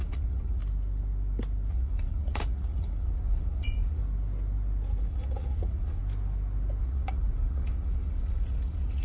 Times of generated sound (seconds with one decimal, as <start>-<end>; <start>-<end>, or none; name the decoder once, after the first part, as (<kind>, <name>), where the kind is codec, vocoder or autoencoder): 0.0-0.6 (vocoder, Vocos); 1.7-4.0; 5.0-6.0; 6.8-9.0